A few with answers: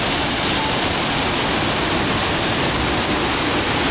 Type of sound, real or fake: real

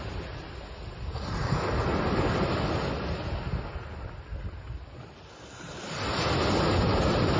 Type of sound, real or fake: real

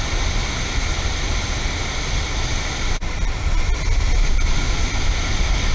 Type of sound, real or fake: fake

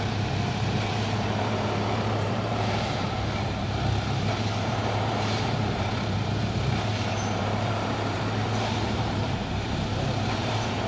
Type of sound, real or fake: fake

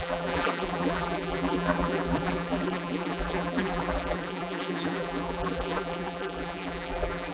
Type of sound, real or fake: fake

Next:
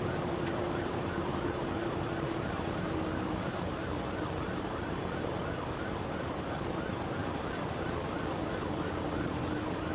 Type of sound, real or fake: fake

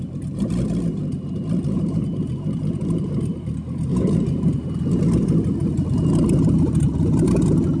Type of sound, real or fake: fake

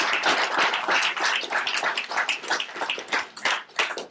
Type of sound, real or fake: fake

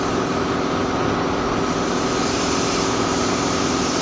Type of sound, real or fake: fake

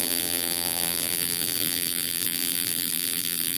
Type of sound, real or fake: fake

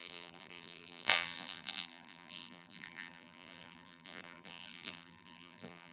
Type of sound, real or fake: fake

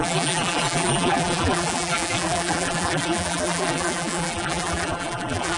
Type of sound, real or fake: fake